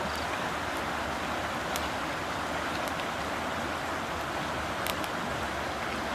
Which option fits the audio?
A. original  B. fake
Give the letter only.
A